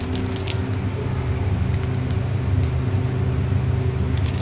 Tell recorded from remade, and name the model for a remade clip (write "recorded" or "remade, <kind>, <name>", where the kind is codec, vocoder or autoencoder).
recorded